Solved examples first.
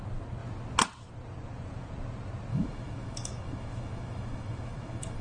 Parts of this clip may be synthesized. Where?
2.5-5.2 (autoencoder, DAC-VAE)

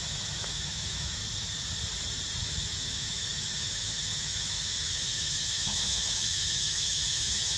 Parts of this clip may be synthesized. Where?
0.0-1.2 (autoencoder, DAC-VAE); 2.4-7.6

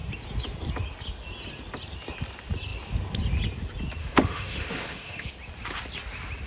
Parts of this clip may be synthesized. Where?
4.0-5.3 (autoencoder, DAC-VAE)

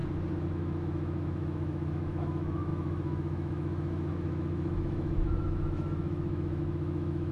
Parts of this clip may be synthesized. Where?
0.5-7.3 (autoencoder, DAC-VAE)